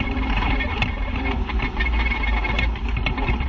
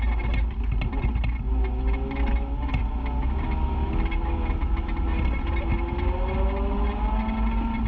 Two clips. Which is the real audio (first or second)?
second